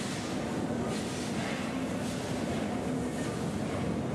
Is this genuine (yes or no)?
yes